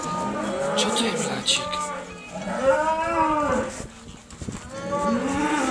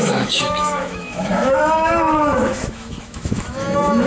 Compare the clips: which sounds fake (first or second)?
second